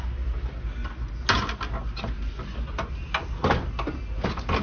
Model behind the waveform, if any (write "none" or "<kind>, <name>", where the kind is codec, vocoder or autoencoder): none